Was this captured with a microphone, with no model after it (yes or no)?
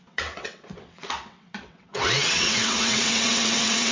no